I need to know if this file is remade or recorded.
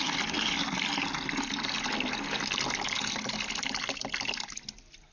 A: recorded